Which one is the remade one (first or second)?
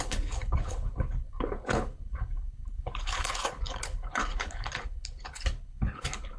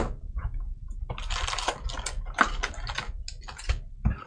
first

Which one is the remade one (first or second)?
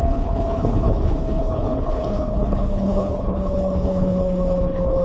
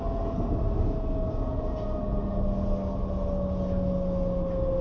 first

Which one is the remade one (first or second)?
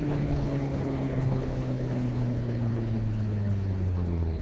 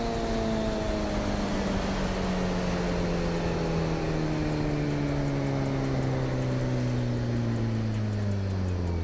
first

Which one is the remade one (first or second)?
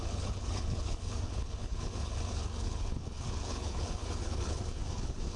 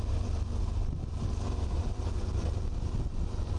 first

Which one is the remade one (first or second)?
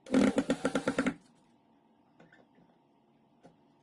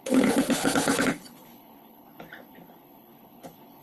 second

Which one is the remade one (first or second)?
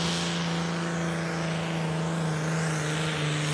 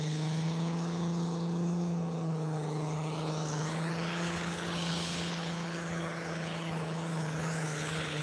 second